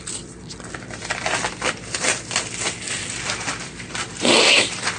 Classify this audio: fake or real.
fake